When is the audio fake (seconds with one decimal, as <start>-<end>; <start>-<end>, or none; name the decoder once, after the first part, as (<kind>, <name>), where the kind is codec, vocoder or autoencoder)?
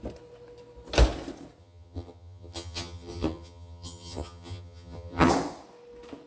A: 1.6-5.3 (vocoder, HiFi-GAN)